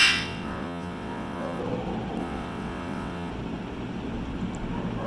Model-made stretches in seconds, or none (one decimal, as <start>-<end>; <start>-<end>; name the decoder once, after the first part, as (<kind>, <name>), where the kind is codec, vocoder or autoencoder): 0.0-1.6 (vocoder, WaveNeXt); 2.2-3.3